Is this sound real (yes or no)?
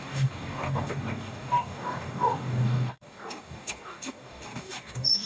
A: no